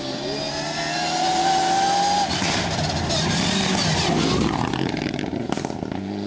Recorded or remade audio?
recorded